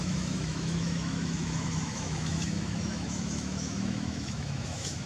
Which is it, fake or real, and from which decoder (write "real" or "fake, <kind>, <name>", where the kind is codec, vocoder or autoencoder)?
fake, autoencoder, DAC-VAE